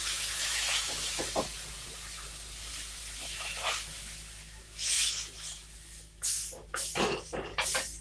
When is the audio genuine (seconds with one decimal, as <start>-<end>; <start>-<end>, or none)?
1.2-2.7; 7.0-8.0